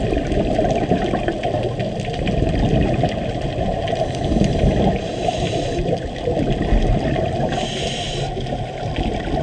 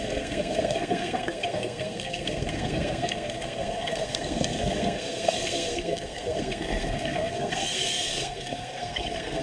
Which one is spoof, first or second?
second